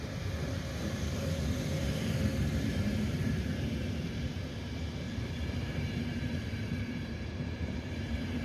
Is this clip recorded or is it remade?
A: remade